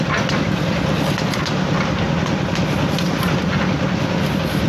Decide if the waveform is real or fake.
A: real